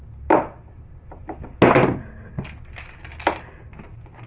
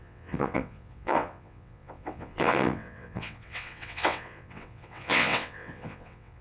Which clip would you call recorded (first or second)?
first